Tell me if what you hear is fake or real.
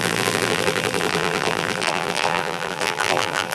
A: fake